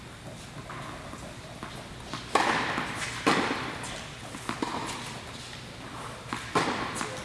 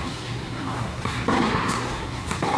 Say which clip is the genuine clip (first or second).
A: first